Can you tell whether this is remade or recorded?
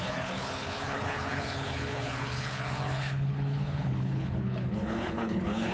remade